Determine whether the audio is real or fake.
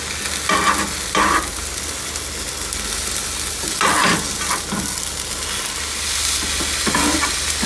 real